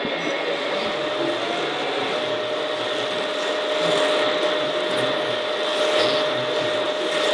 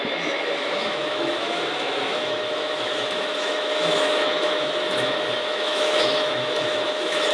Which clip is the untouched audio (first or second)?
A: first